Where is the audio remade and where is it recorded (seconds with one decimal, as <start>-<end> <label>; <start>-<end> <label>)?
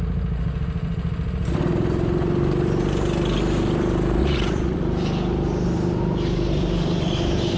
0.0-4.2 recorded; 4.2-4.8 remade; 4.8-7.6 recorded